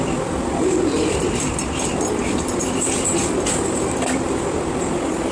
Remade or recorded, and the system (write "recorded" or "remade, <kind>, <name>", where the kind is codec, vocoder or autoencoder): remade, vocoder, BigVGAN v2